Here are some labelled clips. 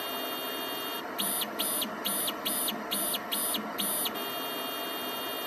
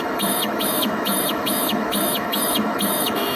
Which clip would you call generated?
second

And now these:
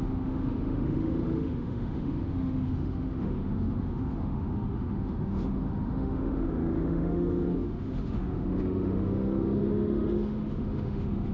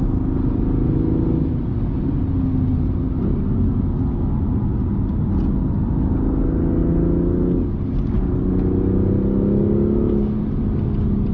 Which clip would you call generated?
first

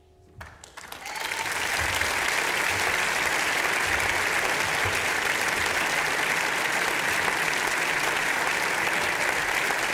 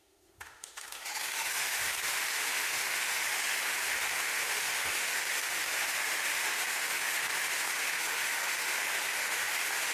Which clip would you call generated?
second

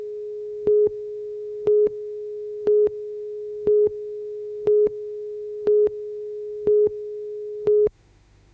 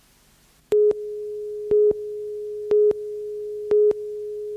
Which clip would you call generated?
first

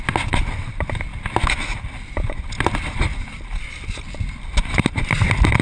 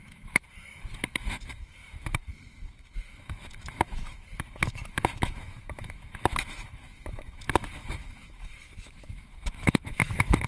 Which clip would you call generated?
second